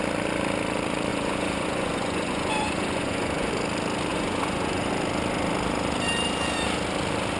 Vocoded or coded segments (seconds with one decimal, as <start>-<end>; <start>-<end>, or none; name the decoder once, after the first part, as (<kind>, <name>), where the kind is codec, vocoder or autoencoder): 1.1-3.5 (vocoder, Vocos); 4.1-4.9